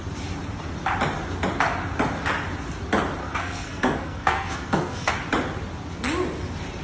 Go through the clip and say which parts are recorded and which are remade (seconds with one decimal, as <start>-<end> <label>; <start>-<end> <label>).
0.0-3.2 recorded; 3.2-5.1 remade; 5.1-6.8 recorded